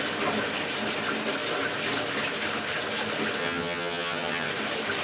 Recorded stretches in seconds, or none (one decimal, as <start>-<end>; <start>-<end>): 0.0-3.4; 4.5-5.0